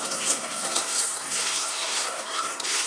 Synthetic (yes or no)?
yes